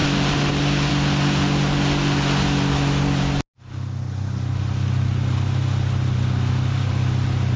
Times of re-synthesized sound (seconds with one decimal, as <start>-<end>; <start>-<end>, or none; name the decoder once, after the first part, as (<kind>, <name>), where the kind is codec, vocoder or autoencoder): none